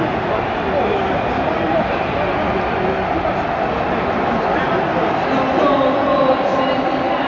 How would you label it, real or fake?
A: real